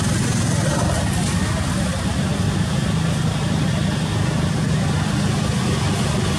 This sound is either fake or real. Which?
real